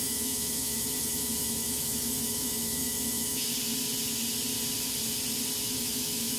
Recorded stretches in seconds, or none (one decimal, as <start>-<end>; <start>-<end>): 3.5-5.6